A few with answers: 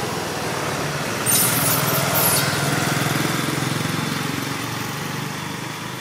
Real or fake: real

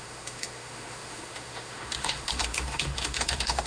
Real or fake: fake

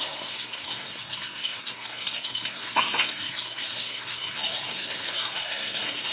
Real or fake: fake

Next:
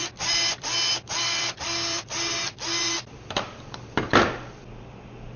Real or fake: fake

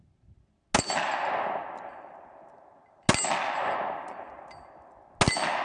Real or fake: real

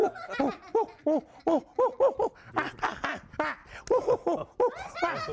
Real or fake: real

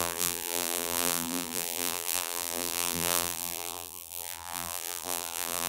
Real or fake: fake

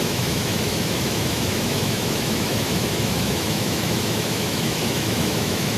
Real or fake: fake